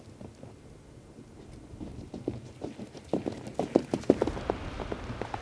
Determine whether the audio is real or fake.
real